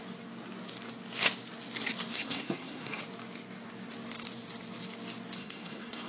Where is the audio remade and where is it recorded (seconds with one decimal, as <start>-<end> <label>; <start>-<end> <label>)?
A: 0.0-2.1 recorded; 2.1-3.0 remade; 3.0-5.4 recorded; 5.4-6.1 remade